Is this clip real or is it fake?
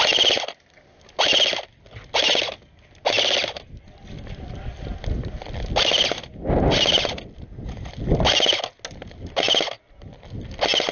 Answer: real